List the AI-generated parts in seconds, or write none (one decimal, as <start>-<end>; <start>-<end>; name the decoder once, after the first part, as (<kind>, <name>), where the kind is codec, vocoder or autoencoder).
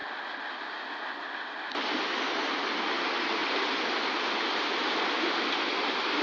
none